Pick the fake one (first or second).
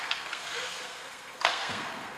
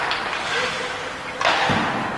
first